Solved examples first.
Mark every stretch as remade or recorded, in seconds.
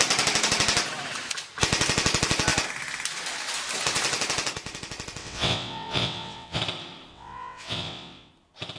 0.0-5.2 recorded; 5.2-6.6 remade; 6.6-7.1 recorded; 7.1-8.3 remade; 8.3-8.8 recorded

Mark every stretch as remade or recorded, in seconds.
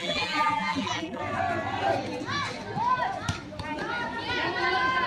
0.0-1.2 remade; 1.2-5.1 recorded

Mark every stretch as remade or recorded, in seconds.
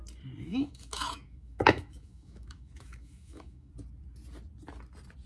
0.0-0.5 recorded; 0.5-3.7 remade; 3.7-5.3 recorded